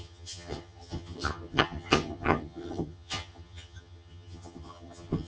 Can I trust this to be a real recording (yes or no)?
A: no